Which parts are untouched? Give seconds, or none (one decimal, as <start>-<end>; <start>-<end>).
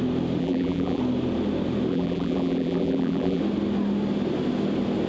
0.0-0.4; 1.0-1.9; 3.4-5.1